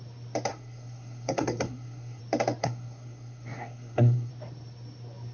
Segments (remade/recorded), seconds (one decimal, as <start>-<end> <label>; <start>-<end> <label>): 0.0-0.5 recorded; 0.5-2.2 remade; 2.2-2.6 recorded; 2.6-4.3 remade; 4.3-5.3 recorded